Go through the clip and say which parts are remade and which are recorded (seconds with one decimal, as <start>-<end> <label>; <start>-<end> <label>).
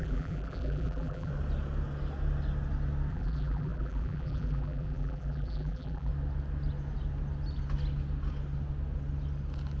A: 0.0-1.3 remade; 1.3-3.1 recorded; 3.1-6.1 remade; 6.1-9.8 recorded